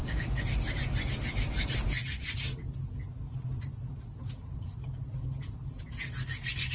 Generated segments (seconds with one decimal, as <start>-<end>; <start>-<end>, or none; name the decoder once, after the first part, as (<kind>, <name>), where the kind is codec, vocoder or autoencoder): none